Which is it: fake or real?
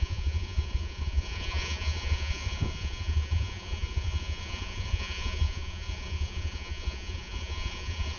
fake